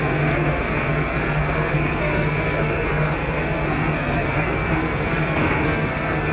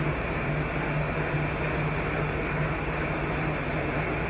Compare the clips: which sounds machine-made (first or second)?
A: first